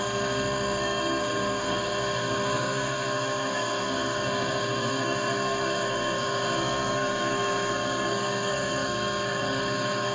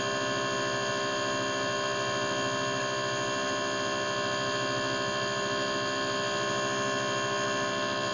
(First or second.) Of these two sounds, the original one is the second